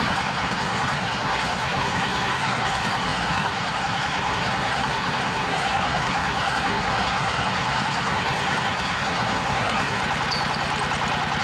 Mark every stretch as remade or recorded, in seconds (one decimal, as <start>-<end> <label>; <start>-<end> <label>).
0.0-10.0 remade; 10.0-11.4 recorded